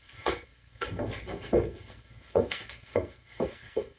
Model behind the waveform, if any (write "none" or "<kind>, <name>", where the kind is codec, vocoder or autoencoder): codec, SNAC